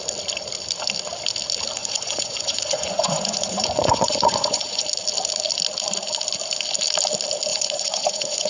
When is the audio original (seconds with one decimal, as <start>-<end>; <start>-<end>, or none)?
0.0-1.8; 4.8-7.5